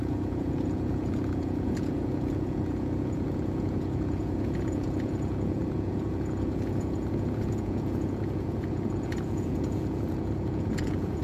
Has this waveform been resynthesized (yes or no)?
yes